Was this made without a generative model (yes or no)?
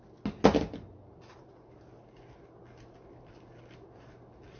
yes